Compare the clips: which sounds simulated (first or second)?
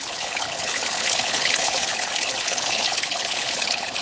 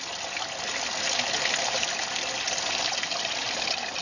first